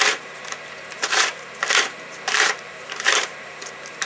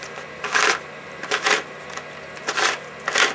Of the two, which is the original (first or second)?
second